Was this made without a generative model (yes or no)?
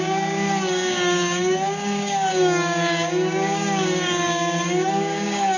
no